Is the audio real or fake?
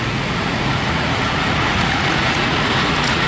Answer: fake